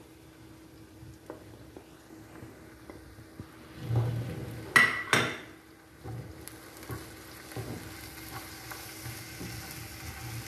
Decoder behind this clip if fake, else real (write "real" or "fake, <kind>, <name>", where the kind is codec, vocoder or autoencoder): real